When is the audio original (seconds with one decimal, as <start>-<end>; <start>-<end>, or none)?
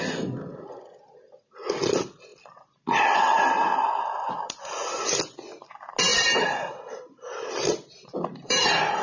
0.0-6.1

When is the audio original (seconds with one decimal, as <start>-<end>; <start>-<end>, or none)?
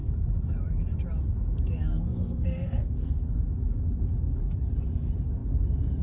0.0-1.9; 3.1-6.0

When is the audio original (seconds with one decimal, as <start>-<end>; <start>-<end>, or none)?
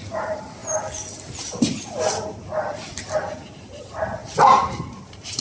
none